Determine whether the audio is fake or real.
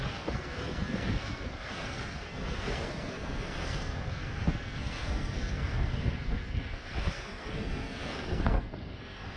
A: fake